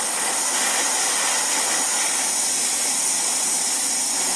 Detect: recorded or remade recorded